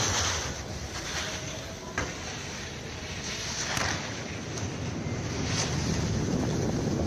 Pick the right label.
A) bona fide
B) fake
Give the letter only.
A